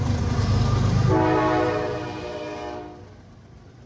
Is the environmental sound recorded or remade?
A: recorded